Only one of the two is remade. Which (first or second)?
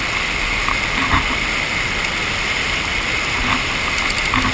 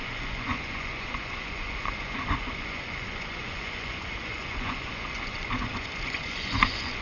second